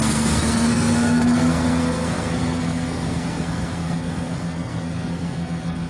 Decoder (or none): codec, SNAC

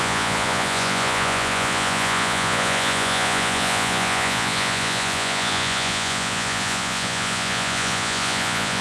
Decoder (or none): vocoder, Vocos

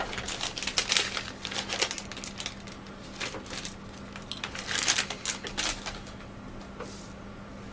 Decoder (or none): none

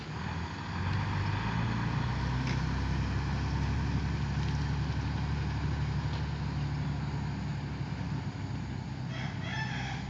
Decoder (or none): none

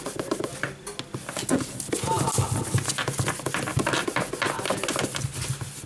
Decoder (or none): none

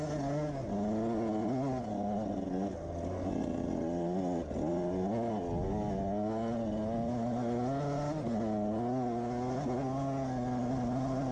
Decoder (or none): none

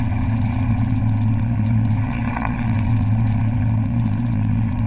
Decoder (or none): vocoder, WaveNeXt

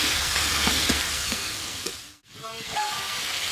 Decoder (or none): codec, SNAC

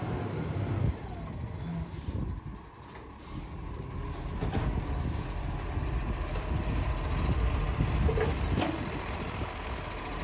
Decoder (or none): none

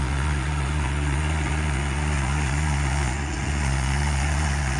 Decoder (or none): vocoder, Vocos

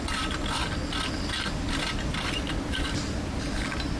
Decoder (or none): none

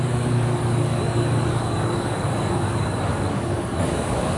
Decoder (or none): codec, DAC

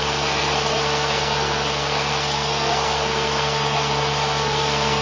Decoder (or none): codec, SNAC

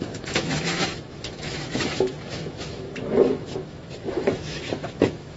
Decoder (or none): autoencoder, DAC-VAE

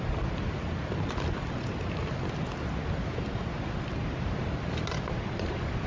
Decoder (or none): none